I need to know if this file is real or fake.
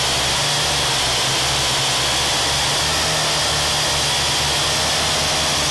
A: real